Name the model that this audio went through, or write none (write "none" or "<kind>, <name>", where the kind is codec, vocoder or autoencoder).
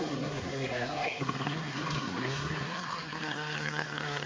codec, SNAC